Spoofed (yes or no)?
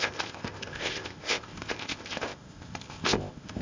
yes